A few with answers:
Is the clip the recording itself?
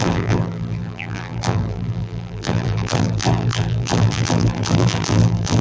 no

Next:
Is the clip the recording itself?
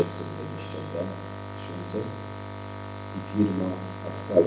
yes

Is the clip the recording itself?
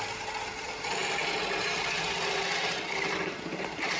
yes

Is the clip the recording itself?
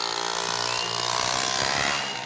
yes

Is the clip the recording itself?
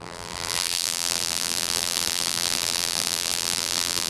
no